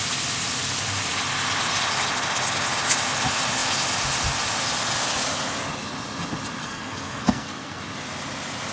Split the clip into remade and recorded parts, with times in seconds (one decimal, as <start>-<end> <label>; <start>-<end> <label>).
0.0-6.6 recorded; 6.6-7.8 remade; 7.8-8.7 recorded